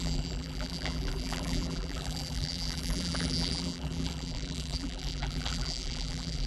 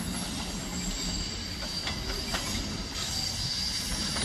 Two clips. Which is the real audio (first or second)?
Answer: second